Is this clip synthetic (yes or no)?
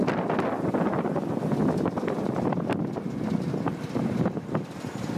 no